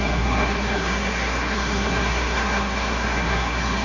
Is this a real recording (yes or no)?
no